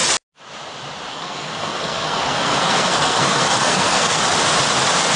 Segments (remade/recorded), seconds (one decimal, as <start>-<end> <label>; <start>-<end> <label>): 0.0-1.1 recorded; 1.1-4.2 remade; 4.2-5.2 recorded